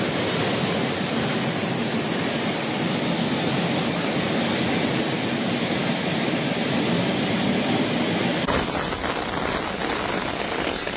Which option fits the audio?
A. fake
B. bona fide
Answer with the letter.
B